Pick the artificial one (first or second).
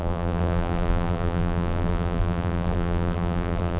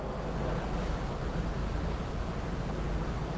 first